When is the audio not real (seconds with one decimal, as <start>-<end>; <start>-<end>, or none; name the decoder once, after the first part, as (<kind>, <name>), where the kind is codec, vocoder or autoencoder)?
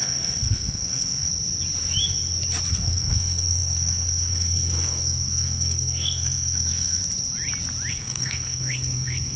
0.0-1.3 (codec, SNAC); 2.7-7.0; 7.9-9.4